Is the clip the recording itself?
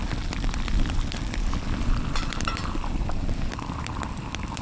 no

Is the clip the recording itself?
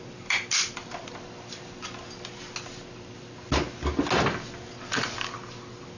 yes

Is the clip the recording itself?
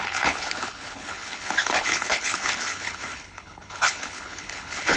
no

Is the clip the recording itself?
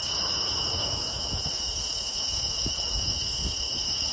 no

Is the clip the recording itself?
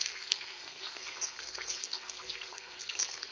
no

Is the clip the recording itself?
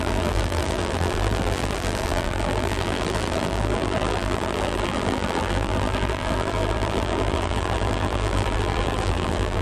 no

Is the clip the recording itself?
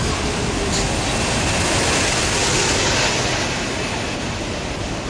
yes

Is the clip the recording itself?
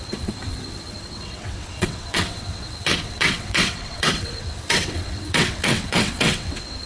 no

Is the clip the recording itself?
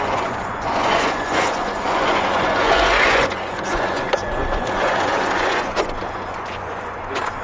no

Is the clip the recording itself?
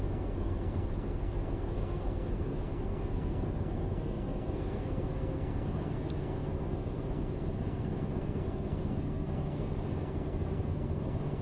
no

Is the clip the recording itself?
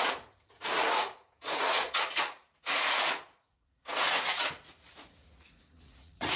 no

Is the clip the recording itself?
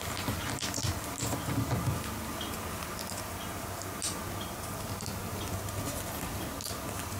yes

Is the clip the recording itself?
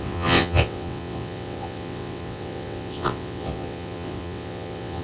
no